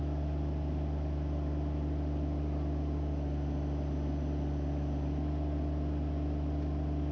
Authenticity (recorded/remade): recorded